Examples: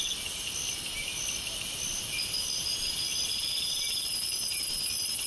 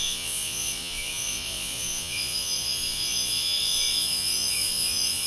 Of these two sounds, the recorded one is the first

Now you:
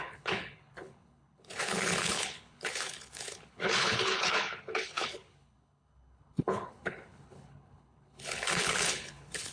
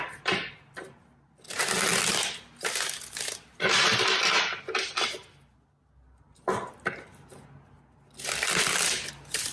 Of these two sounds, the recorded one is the second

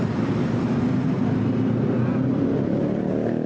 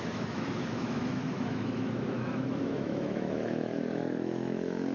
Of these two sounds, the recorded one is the first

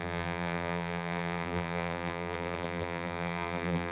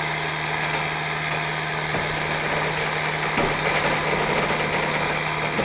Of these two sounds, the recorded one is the second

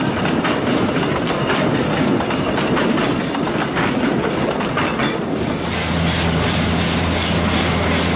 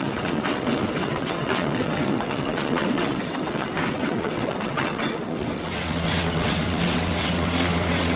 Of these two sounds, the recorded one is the first